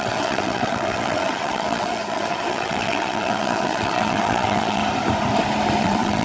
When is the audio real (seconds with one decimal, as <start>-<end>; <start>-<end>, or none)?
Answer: 4.8-5.8